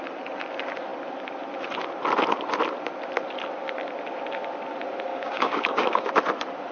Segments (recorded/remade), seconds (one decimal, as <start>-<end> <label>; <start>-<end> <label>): 0.0-5.1 recorded; 5.1-6.1 remade; 6.1-6.7 recorded